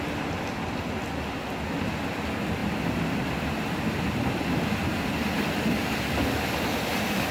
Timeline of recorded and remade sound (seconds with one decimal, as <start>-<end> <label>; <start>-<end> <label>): 0.0-7.3 recorded